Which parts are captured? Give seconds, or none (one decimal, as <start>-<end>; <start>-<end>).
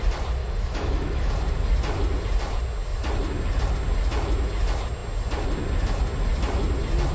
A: 0.0-0.4; 1.3-7.1